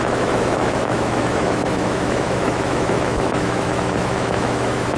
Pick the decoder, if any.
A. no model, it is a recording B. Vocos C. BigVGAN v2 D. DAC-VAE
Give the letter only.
D